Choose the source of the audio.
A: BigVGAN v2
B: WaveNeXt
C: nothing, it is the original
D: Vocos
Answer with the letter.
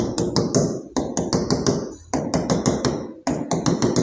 C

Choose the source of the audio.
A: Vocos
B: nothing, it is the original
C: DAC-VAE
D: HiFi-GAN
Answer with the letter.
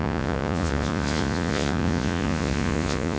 A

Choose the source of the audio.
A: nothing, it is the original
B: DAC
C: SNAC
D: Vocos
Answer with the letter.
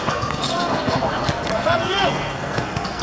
C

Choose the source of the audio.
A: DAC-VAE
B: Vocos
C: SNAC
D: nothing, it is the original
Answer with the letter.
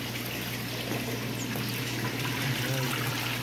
D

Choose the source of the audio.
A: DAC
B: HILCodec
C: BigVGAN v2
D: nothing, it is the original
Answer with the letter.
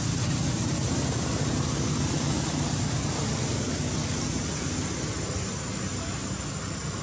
D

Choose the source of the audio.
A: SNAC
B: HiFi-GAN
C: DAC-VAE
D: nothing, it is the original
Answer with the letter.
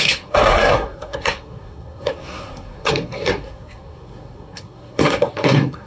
A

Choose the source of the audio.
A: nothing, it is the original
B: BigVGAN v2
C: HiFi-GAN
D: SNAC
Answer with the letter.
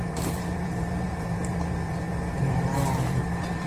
B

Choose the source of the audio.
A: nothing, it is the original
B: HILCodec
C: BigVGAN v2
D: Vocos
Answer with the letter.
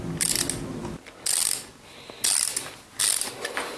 A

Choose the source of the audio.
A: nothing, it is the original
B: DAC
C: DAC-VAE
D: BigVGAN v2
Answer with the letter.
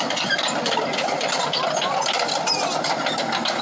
A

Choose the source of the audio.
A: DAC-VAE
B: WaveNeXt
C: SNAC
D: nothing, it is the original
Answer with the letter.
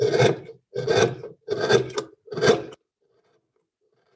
D